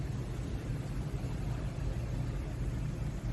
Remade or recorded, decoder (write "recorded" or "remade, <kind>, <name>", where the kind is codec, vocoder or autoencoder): recorded